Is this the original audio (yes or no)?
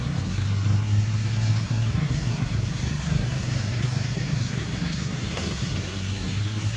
no